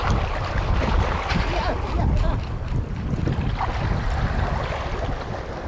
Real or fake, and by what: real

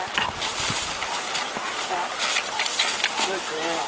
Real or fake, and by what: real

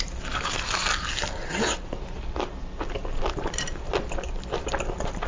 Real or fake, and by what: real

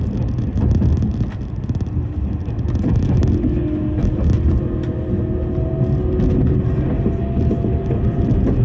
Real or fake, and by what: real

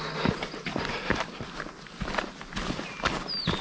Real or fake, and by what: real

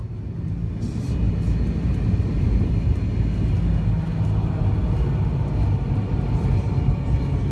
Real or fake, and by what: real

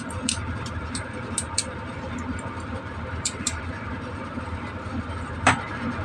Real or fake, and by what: fake, vocoder, BigVGAN v2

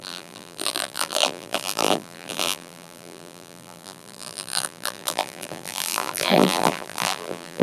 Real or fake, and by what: fake, vocoder, BigVGAN v2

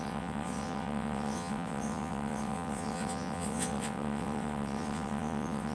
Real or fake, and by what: fake, vocoder, WaveNeXt